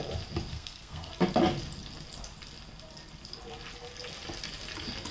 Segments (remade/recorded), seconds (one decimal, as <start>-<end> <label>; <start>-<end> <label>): 0.0-0.5 recorded; 0.5-1.1 remade; 1.1-5.1 recorded